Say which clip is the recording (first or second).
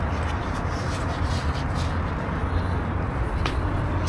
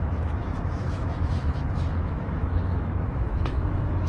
first